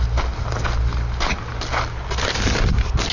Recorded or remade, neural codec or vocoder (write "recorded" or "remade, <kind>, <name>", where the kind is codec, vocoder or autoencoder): recorded